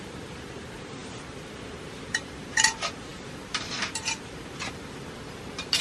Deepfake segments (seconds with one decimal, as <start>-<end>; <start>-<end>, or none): 0.0-5.8